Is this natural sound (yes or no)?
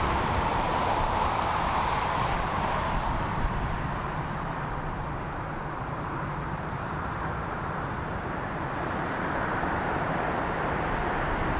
no